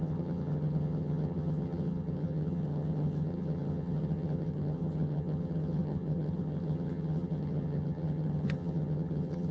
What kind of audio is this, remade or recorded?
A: remade